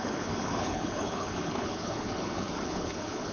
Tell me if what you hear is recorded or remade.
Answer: remade